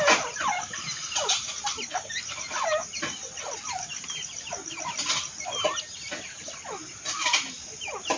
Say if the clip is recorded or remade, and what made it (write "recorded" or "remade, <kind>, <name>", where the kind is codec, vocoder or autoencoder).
recorded